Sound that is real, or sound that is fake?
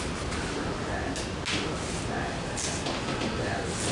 real